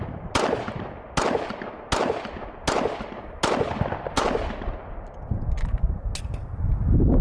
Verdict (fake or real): real